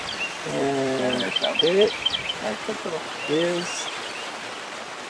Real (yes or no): no